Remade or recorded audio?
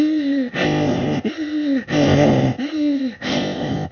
remade